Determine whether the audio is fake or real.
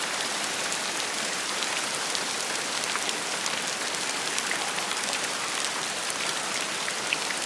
fake